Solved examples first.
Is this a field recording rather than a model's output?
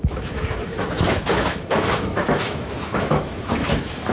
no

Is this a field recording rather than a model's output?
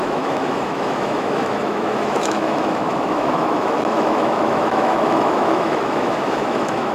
no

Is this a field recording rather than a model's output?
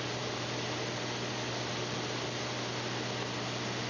yes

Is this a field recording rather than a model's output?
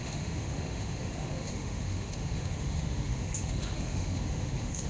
no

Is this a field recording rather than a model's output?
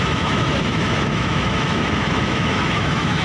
no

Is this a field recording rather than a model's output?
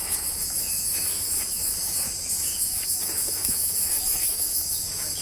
no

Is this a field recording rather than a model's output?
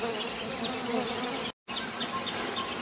yes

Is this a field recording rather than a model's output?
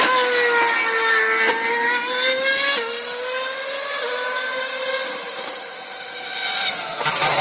yes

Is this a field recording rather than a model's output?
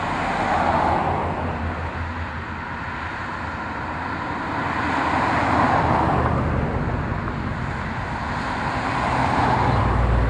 yes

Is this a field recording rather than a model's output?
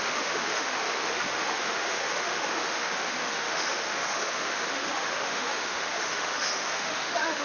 no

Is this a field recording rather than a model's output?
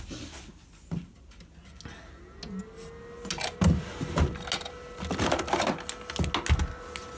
yes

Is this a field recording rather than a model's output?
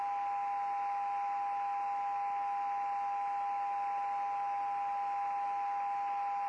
yes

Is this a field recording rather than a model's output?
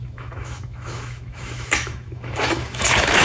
no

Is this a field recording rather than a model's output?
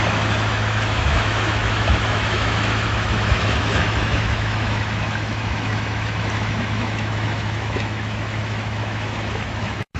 no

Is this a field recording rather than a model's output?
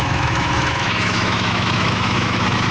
no